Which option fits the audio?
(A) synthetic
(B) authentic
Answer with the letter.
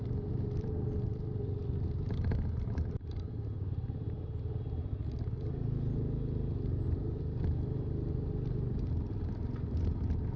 B